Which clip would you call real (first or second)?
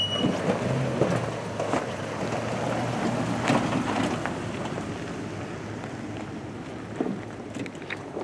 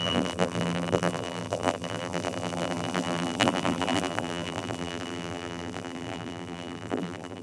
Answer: first